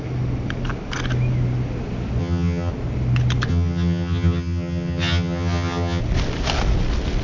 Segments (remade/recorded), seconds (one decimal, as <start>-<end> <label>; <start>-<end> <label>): 0.0-2.2 recorded; 2.2-2.7 remade; 2.7-3.5 recorded; 3.5-6.0 remade; 6.0-7.2 recorded